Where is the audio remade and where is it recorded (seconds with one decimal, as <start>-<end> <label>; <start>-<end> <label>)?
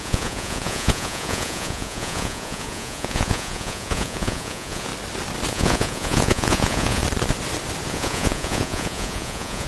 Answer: 0.0-4.9 remade; 4.9-5.5 recorded; 5.5-7.0 remade; 7.0-7.9 recorded; 7.9-9.7 remade